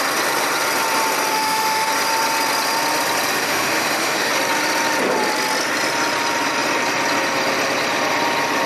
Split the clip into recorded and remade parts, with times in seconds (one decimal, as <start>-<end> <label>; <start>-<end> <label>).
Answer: 0.0-1.3 recorded; 1.3-1.9 remade; 1.9-3.4 recorded; 3.4-4.3 remade; 4.3-8.7 recorded